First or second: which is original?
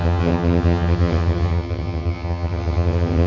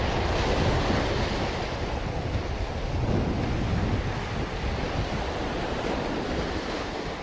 second